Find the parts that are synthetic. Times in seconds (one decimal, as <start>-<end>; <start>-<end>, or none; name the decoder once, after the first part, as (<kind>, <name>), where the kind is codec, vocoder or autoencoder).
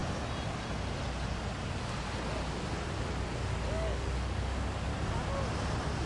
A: 3.7-4.9 (codec, DAC)